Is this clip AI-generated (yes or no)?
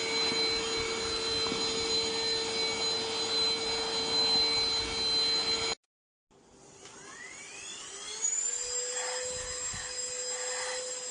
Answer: no